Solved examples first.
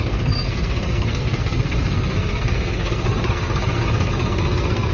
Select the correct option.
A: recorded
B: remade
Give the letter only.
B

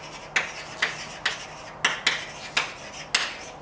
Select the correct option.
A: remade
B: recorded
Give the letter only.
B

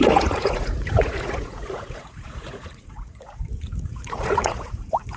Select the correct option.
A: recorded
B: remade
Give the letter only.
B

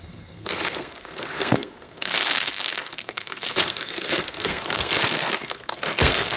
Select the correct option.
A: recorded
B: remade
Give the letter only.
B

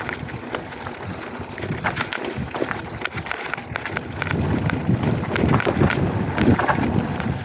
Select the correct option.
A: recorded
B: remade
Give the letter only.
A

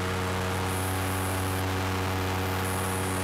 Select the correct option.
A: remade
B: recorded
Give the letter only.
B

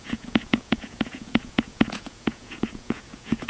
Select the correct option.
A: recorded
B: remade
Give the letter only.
B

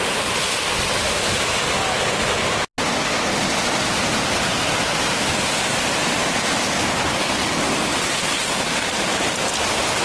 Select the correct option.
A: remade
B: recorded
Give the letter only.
B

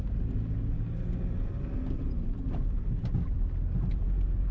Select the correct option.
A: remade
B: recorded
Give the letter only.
B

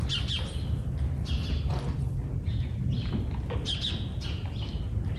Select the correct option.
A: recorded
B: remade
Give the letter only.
A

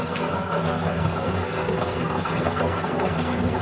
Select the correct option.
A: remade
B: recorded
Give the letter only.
A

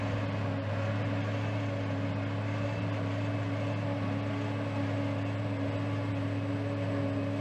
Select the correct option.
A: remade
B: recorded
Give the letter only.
B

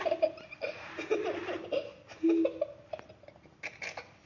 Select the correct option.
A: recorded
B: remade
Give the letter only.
A